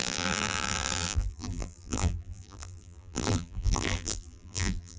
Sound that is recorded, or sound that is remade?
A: remade